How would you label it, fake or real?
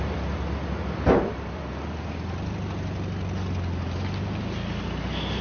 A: real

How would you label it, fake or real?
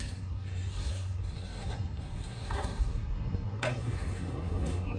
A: fake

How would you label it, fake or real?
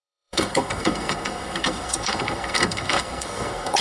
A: fake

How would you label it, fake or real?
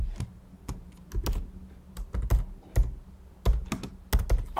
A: real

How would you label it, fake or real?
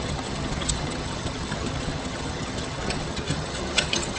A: fake